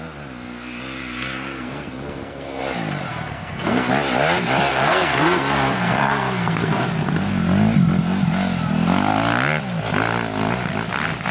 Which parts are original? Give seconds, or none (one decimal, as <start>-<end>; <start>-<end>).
0.0-1.0; 2.6-3.1; 3.9-4.7; 6.9-11.3

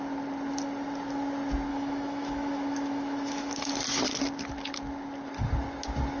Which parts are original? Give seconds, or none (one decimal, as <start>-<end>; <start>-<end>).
0.0-1.7; 3.7-6.2